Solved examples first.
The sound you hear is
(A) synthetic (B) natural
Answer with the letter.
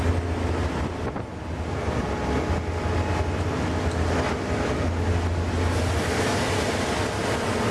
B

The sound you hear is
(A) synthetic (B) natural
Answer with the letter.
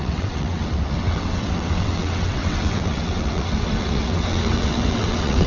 A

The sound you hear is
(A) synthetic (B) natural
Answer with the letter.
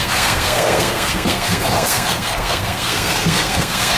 A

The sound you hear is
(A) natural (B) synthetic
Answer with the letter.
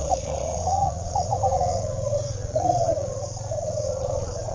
B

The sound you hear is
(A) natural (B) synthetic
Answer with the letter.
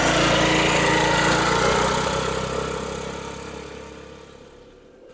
A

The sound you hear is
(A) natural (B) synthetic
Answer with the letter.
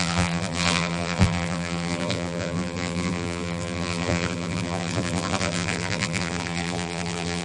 B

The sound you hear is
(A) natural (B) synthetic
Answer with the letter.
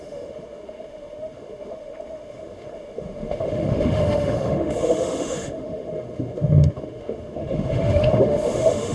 B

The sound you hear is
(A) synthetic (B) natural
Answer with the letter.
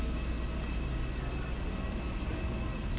B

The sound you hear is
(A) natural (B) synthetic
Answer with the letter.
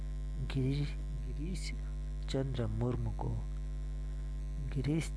A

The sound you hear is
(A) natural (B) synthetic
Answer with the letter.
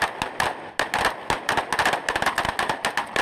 A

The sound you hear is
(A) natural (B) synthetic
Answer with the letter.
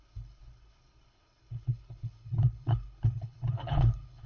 B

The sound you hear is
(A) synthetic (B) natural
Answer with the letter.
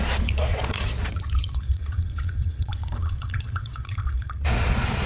A